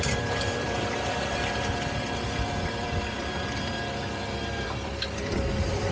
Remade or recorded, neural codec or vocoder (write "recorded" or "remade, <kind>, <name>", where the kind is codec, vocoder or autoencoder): remade, vocoder, BigVGAN v2